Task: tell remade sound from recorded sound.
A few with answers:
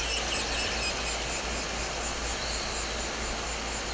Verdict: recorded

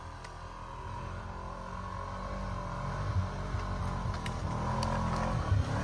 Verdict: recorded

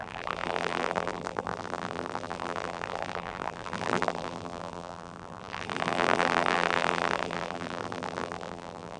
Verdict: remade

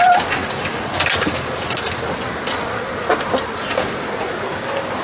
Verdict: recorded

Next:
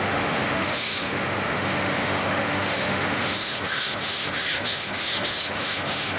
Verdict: remade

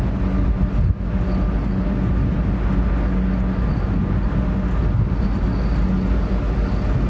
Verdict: recorded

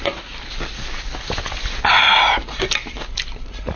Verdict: recorded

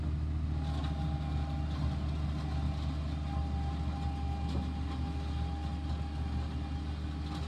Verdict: recorded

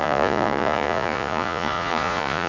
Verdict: remade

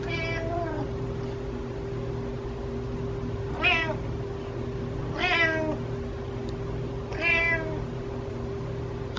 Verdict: recorded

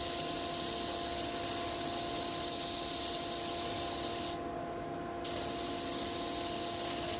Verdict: recorded